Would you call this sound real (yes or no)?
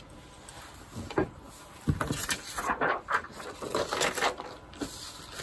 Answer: yes